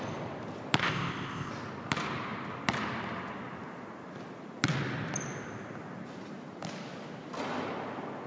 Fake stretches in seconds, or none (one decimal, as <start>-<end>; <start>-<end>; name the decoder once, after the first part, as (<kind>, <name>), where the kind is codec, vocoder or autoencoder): 0.8-1.5 (codec, ZipCodec)